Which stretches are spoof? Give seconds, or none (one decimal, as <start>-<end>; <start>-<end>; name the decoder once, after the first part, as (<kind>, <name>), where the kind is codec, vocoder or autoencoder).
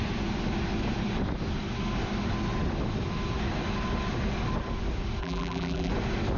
5.2-5.9 (vocoder, BigVGAN v2)